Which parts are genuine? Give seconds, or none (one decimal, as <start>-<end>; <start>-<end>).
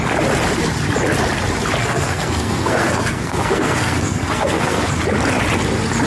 0.0-1.8; 4.9-6.1